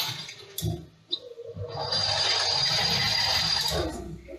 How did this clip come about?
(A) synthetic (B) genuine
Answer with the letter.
B